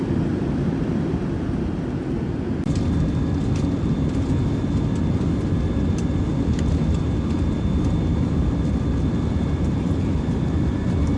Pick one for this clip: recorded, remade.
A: remade